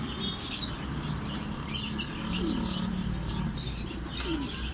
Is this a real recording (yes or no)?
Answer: yes